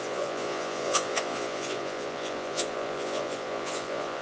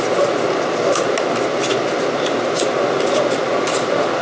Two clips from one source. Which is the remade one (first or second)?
first